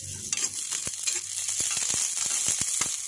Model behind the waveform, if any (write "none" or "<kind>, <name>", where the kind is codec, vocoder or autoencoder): none